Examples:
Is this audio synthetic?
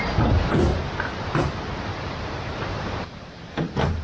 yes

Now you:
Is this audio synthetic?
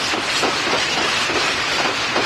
no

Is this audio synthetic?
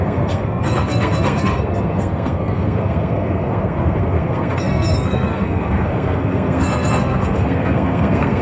yes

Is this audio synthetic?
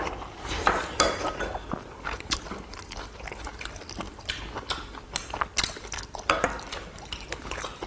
yes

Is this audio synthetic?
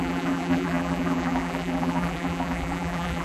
yes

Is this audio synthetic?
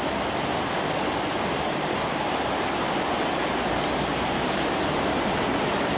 no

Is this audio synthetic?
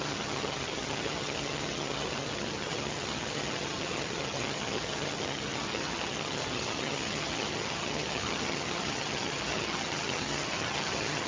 yes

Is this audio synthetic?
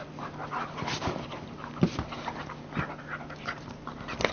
no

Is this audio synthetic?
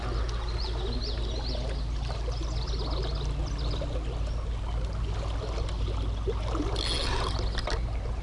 no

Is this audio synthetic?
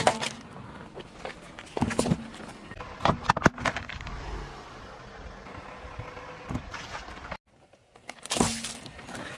no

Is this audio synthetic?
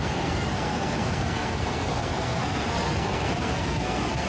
yes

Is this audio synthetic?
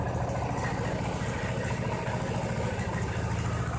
no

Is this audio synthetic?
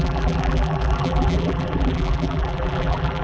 yes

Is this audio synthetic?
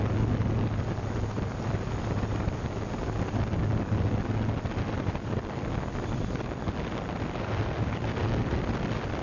no